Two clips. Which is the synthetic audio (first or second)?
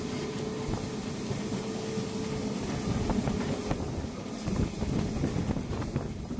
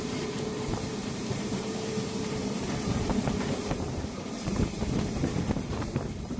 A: second